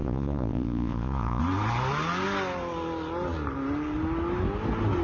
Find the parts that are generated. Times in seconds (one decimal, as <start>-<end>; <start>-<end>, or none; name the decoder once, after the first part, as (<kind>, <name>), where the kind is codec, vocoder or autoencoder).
0.0-1.4 (vocoder, Vocos)

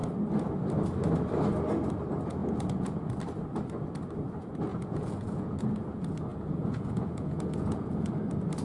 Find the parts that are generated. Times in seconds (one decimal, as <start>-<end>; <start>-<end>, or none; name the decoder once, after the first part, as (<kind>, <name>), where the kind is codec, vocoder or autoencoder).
2.4-3.1 (vocoder, Vocos); 4.7-5.6; 6.3-8.1

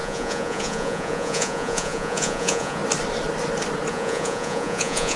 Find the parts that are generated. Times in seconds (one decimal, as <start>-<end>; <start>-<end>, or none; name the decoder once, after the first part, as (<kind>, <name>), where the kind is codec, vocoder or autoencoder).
0.0-2.8 (vocoder, Vocos); 3.9-5.2